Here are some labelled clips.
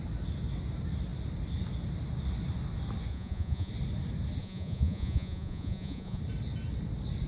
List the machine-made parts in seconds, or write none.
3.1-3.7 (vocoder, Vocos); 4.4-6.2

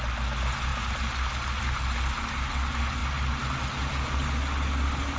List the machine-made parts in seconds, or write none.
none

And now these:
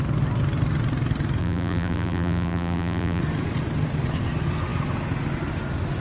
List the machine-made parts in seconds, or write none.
1.4-3.2 (vocoder, BigVGAN v2)

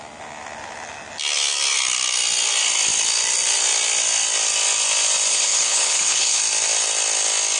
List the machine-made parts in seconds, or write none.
5.3-6.4 (codec, HILCodec)

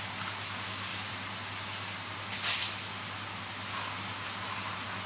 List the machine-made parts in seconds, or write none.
none